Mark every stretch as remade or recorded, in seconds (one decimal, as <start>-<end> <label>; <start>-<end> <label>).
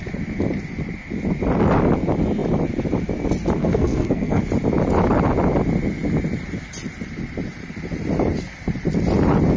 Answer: 0.0-3.6 recorded; 3.6-4.4 remade; 4.4-9.6 recorded